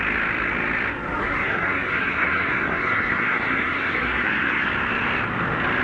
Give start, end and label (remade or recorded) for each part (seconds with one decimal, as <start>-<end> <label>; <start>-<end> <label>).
0.0-1.2 recorded; 1.2-4.7 remade; 4.7-5.8 recorded